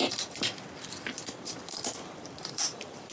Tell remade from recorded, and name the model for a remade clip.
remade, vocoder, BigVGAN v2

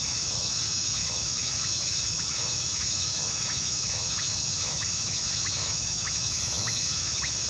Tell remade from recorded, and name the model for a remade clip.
remade, autoencoder, DAC-VAE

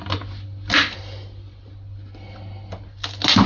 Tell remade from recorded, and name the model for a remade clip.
recorded